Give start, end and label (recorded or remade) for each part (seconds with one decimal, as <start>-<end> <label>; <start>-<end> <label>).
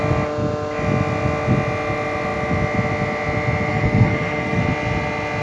0.0-3.7 recorded; 3.7-4.6 remade; 4.6-5.4 recorded